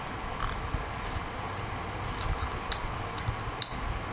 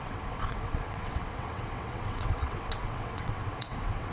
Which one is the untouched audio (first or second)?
first